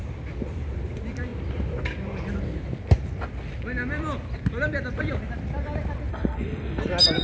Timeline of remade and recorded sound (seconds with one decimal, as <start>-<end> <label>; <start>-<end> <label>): 0.0-6.1 recorded; 6.1-6.8 remade; 6.8-7.2 recorded